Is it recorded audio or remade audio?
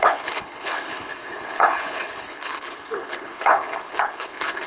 remade